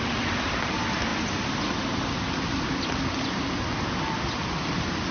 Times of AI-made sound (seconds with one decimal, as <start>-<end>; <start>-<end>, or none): none

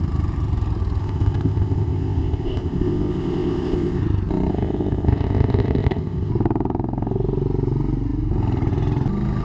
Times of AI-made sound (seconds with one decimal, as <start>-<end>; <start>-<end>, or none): 1.0-4.0; 4.5-6.3